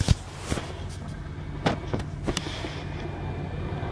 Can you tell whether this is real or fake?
real